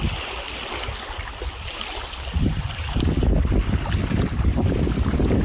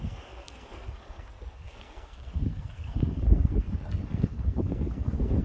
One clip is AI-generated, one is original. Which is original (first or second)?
first